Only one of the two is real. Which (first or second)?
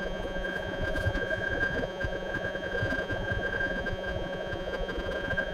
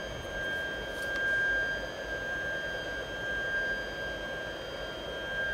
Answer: second